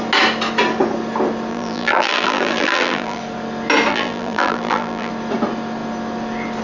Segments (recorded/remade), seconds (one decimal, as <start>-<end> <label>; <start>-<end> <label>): 0.0-1.5 recorded; 1.5-3.2 remade; 3.2-3.9 recorded; 3.9-5.1 remade; 5.1-6.6 recorded